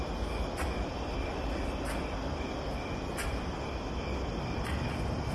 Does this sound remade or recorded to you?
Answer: recorded